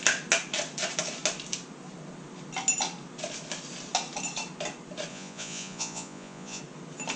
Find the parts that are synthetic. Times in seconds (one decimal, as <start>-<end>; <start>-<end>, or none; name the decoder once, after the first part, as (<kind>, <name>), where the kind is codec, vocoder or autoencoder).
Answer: 5.1-6.6 (vocoder, Vocos)